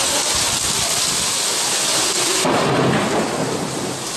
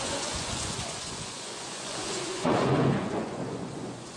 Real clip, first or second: first